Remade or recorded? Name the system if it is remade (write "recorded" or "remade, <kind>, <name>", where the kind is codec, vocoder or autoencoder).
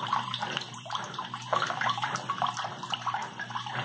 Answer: remade, vocoder, BigVGAN v2